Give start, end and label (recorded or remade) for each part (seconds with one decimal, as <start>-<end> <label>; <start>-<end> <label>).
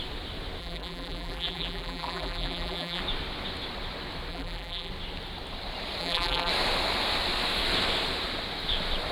0.0-0.6 recorded; 0.6-3.0 remade; 3.0-4.3 recorded; 4.3-4.9 remade; 4.9-6.0 recorded; 6.0-6.5 remade; 6.5-9.1 recorded